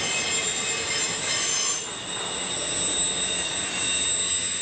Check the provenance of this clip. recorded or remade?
recorded